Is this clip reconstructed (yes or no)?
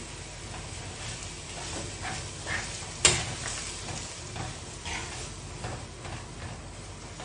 no